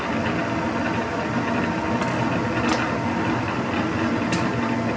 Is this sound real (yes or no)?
yes